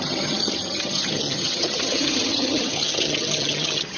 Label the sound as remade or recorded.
remade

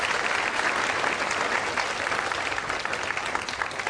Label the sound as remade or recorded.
recorded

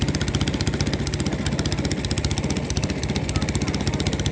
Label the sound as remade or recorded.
recorded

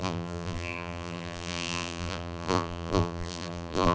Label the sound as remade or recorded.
remade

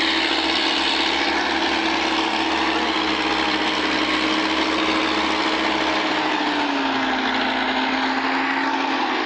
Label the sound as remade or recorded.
recorded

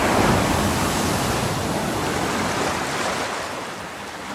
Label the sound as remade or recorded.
recorded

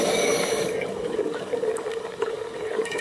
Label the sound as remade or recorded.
remade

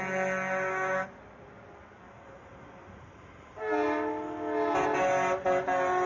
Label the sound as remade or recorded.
recorded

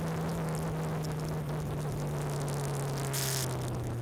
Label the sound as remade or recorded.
recorded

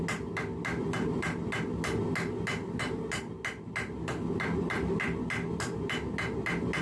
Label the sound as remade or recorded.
recorded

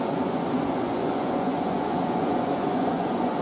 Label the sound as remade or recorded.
remade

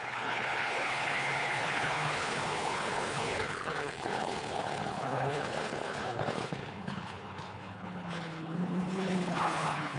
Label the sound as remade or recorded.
remade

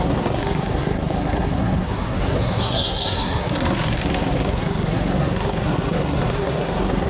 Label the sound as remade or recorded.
remade